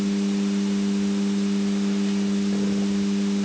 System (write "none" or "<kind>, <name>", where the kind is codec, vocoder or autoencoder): none